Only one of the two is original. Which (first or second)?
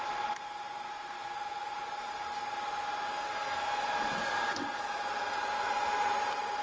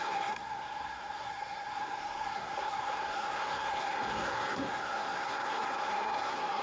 first